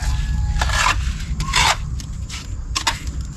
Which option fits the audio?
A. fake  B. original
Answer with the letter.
B